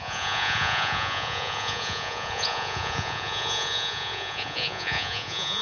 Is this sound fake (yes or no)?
yes